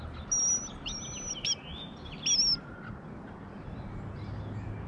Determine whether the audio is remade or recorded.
recorded